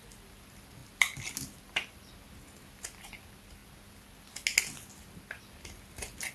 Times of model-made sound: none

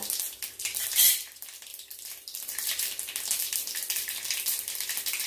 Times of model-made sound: 1.7-2.8 (vocoder, BigVGAN v2)